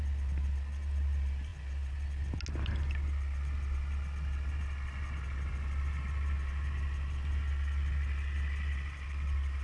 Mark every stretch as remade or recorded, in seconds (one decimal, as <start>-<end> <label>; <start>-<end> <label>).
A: 0.0-9.6 recorded